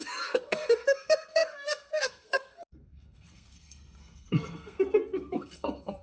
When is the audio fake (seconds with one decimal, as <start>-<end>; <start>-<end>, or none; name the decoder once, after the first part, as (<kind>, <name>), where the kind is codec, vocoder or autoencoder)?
0.0-6.0 (codec, SNAC)